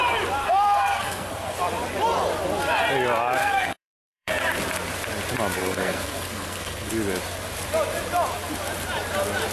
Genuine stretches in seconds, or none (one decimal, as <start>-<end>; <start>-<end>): 0.0-0.4; 1.6-3.4; 4.3-5.6; 6.9-9.5